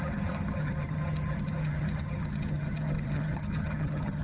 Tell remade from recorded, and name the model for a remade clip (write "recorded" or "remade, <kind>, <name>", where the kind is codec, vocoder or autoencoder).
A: remade, vocoder, HiFi-GAN